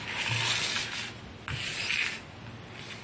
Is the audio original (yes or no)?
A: yes